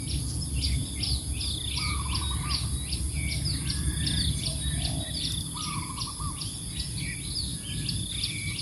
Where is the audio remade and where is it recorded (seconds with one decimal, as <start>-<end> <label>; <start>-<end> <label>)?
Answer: 0.0-8.6 recorded

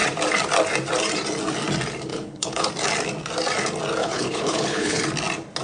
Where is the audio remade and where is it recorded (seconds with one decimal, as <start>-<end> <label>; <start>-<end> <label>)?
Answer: 0.0-2.1 recorded; 2.1-2.7 remade; 2.7-4.0 recorded; 4.0-5.0 remade; 5.0-5.6 recorded